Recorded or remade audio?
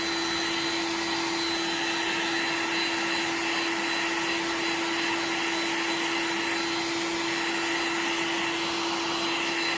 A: recorded